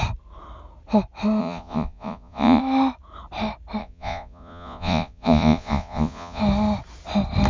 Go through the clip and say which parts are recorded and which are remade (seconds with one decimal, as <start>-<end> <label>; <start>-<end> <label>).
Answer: 0.0-1.4 recorded; 1.4-2.6 remade; 2.6-3.8 recorded; 3.8-6.4 remade; 6.4-7.5 recorded